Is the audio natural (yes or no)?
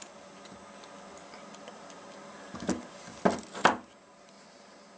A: yes